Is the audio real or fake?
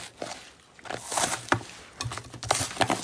real